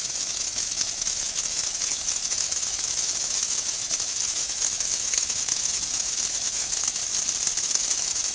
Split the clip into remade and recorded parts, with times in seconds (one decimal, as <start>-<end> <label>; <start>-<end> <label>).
0.0-7.0 remade; 7.0-7.6 recorded; 7.6-8.3 remade